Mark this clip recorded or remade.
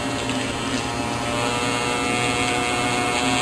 recorded